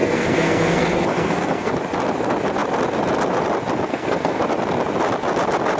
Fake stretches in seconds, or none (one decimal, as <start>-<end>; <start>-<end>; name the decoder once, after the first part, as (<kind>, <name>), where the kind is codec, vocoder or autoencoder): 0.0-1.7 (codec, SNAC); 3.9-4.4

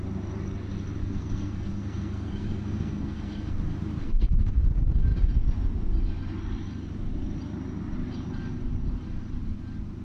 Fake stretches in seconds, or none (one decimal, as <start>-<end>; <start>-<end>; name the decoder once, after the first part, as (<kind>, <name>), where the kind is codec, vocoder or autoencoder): 1.0-3.6 (codec, SNAC); 4.0-4.6

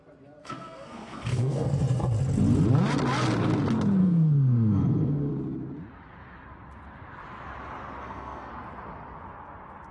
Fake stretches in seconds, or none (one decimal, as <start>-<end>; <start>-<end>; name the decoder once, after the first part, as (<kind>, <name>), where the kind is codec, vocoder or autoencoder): 0.4-1.7 (codec, SNAC); 4.0-5.3; 8.0-8.5